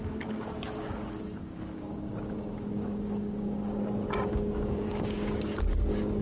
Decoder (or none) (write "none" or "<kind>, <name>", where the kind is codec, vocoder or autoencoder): codec, DAC